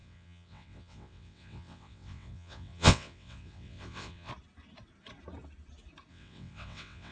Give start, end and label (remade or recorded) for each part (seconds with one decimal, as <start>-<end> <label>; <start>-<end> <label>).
0.0-4.3 remade; 4.3-6.1 recorded; 6.1-7.1 remade